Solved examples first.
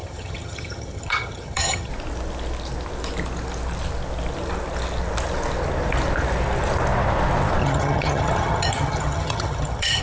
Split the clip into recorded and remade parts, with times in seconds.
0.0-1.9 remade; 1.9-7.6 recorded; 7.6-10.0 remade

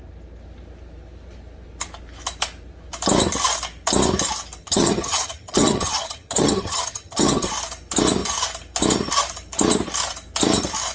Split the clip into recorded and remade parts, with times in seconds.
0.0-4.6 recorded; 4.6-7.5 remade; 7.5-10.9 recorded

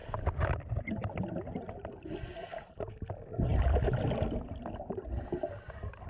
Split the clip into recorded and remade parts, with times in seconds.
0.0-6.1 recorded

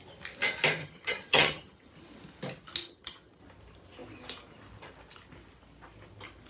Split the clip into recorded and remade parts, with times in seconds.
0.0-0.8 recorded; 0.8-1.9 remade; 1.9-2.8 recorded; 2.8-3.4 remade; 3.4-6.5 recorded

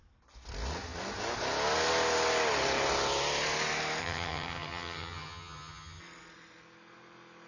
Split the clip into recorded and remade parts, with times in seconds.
0.0-4.0 recorded; 4.0-6.0 remade; 6.0-7.5 recorded

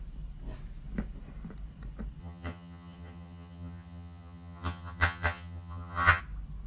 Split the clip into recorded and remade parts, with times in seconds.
0.0-2.2 recorded; 2.2-6.2 remade; 6.2-6.7 recorded

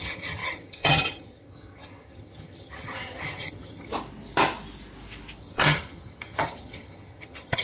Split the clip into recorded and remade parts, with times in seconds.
0.0-3.9 remade; 3.9-5.4 recorded; 5.4-7.6 remade